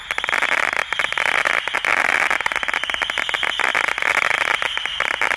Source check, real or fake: real